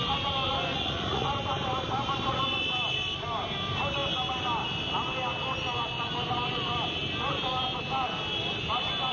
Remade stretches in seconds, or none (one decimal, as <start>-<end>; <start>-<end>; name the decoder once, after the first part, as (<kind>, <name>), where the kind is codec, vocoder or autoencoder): 0.7-1.3 (vocoder, Vocos)